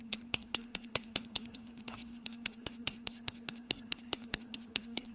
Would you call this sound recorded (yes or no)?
no